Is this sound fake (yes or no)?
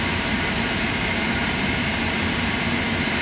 yes